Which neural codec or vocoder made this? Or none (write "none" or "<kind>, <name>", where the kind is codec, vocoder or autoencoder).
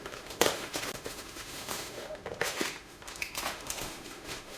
autoencoder, DAC-VAE